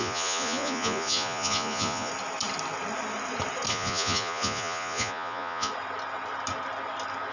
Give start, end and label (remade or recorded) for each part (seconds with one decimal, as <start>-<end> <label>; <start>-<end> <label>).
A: 0.0-2.1 remade; 2.1-3.7 recorded; 3.7-5.7 remade; 5.7-7.3 recorded